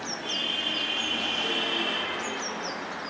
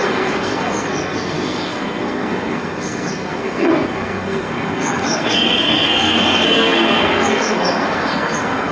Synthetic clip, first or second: second